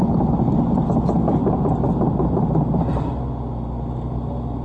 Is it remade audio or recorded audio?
recorded